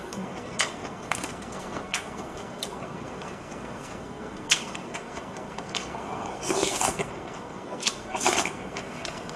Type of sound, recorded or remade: remade